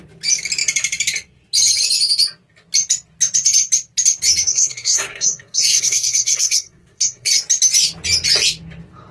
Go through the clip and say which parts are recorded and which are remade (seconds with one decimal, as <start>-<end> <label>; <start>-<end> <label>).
0.0-4.5 recorded; 4.5-7.3 remade; 7.3-9.1 recorded